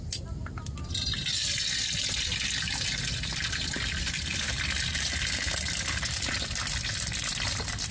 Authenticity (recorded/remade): recorded